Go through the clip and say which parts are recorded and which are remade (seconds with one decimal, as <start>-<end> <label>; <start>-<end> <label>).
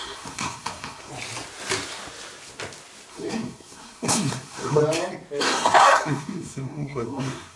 0.0-1.1 remade; 1.1-3.1 recorded; 3.1-4.8 remade; 4.8-5.4 recorded; 5.4-7.6 remade